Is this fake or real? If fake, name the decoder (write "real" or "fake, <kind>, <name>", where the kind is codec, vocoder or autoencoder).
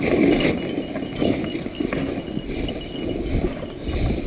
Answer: real